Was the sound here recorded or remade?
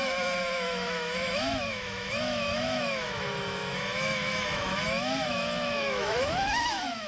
remade